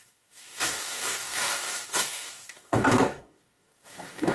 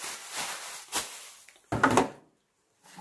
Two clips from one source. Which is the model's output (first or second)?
first